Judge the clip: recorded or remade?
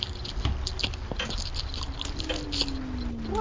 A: recorded